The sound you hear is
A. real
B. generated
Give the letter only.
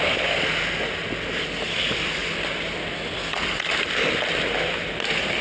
A